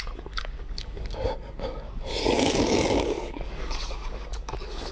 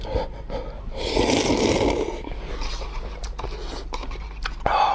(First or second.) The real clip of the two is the second